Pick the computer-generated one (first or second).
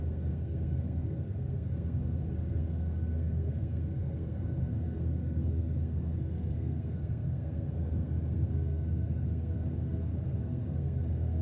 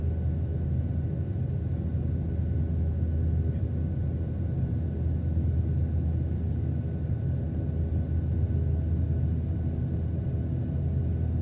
first